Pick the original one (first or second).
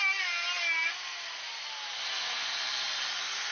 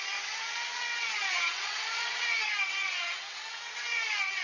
first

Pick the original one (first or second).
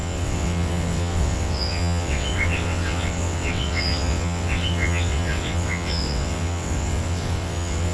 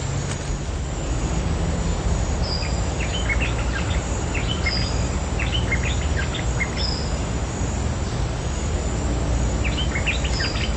second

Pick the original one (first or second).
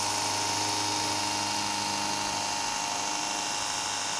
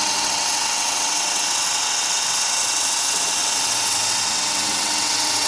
first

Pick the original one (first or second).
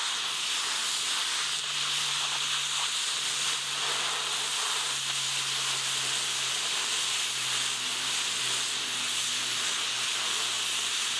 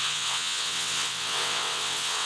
first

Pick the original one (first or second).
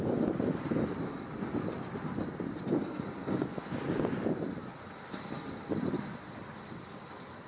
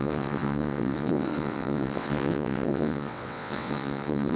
first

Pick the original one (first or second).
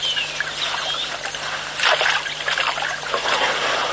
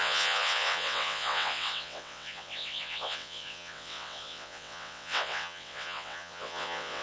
first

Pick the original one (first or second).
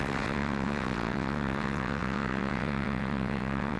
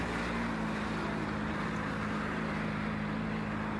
second